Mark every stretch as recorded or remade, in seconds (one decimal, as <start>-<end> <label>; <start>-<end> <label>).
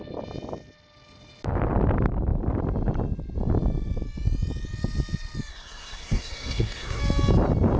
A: 0.0-5.5 recorded; 5.5-7.0 remade; 7.0-7.8 recorded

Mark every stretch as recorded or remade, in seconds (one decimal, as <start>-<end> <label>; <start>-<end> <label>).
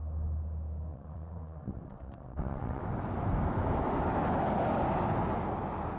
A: 0.0-0.9 recorded; 0.9-2.8 remade; 2.8-6.0 recorded